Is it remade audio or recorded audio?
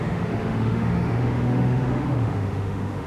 remade